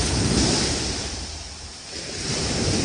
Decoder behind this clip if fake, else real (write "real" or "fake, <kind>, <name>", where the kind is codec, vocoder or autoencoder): fake, vocoder, BigVGAN v2